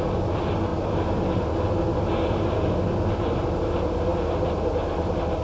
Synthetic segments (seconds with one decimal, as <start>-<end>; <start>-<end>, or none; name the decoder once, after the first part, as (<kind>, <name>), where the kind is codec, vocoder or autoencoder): none